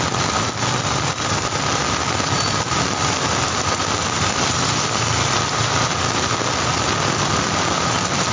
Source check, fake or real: real